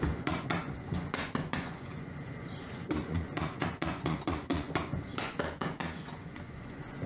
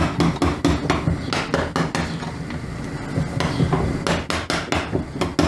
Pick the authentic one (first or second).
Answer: second